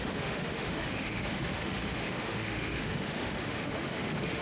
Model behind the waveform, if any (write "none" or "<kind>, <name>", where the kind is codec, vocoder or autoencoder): autoencoder, DAC-VAE